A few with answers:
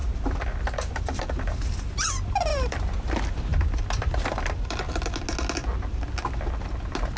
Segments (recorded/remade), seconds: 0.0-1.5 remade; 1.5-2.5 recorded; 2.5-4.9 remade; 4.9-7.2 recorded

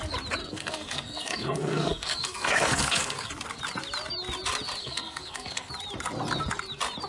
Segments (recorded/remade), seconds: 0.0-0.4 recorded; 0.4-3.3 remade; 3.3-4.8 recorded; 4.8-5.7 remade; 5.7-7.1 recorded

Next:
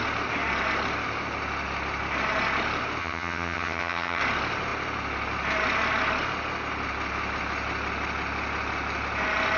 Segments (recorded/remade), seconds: 0.0-3.0 recorded; 3.0-4.2 remade; 4.2-9.6 recorded

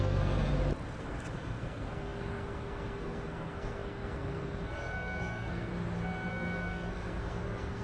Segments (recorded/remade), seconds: 0.0-0.5 remade; 0.5-1.0 recorded; 1.0-5.7 remade; 5.7-6.3 recorded; 6.3-7.8 remade

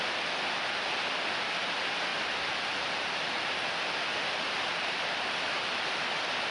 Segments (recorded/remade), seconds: 0.0-6.5 recorded